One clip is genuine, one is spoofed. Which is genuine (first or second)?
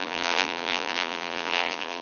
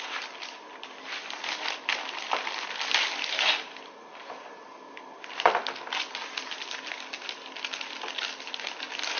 second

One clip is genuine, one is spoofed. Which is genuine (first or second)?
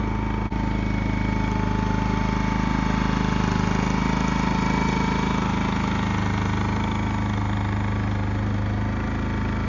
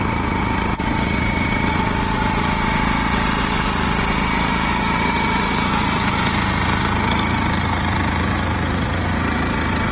first